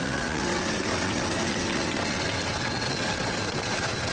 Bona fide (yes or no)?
no